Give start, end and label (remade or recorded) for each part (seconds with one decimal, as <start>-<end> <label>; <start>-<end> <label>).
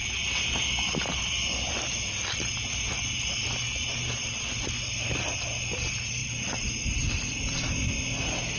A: 0.0-8.6 recorded